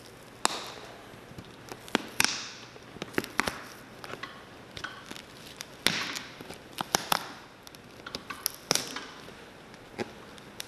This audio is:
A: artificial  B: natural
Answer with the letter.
B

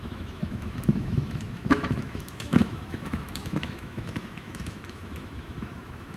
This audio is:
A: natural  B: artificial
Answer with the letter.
B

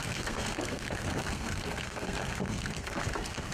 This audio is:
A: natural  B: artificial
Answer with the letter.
B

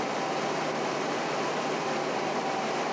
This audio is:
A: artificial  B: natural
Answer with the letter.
A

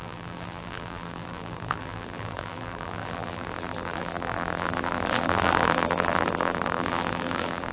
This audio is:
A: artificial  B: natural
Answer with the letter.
A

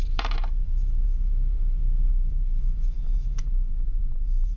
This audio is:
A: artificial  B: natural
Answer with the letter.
A